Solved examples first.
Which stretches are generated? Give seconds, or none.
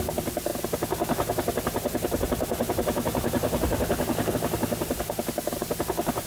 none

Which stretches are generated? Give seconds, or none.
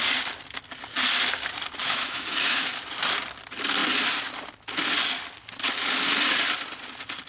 1.8-2.8 (autoencoder, DAC-VAE)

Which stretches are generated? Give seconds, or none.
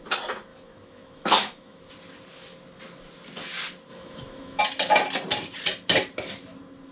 0.5-1.9 (autoencoder, DAC-VAE); 3.9-4.6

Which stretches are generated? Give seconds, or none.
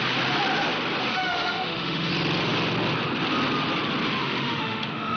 1.1-2.1 (autoencoder, DAC-VAE); 4.2-5.2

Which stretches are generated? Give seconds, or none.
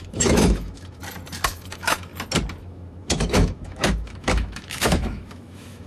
0.0-1.0 (autoencoder, DAC-VAE); 1.5-2.1; 2.6-5.9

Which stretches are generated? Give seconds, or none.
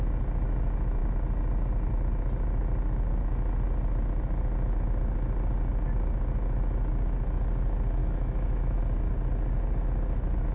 8.0-8.8 (autoencoder, DAC-VAE)